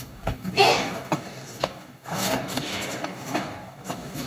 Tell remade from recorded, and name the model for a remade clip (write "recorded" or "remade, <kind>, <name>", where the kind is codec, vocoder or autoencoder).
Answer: remade, codec, DAC